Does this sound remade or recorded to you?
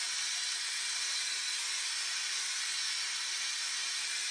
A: recorded